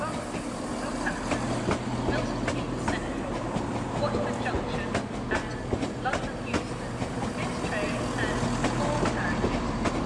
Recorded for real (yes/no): yes